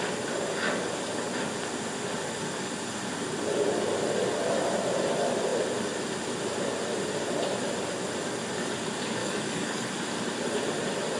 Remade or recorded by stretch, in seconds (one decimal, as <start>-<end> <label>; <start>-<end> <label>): 0.0-9.2 recorded; 9.2-9.9 remade; 9.9-11.2 recorded